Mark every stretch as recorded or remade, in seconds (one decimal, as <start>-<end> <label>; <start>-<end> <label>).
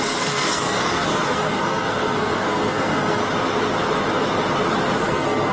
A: 0.0-3.2 remade; 3.2-5.0 recorded; 5.0-5.5 remade